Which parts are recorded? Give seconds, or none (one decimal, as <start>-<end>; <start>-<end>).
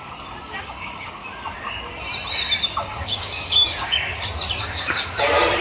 0.0-0.6; 1.2-2.7; 4.1-4.6